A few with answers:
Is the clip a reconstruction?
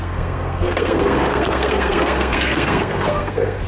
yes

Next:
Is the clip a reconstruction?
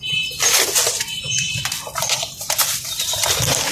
no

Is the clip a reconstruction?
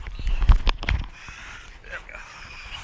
no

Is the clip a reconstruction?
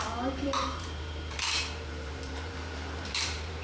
yes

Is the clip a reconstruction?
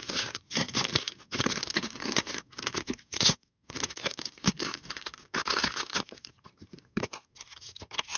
yes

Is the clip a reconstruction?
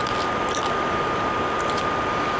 no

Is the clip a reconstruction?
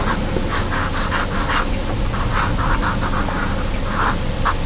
no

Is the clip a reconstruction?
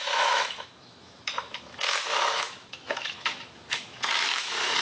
yes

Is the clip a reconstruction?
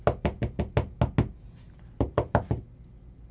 no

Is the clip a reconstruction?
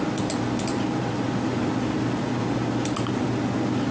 no